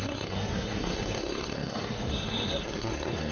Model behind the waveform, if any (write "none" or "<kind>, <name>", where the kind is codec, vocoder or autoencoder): codec, SNAC